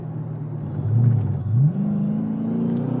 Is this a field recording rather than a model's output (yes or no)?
yes